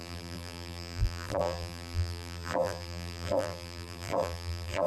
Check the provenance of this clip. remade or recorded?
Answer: remade